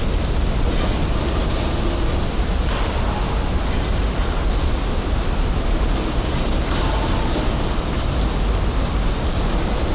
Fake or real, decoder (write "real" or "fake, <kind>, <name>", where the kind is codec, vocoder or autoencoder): real